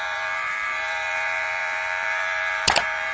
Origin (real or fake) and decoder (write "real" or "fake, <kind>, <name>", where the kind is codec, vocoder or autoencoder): fake, vocoder, BigVGAN v2